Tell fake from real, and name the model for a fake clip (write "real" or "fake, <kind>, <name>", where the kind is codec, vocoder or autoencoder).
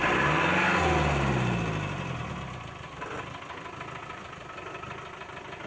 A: real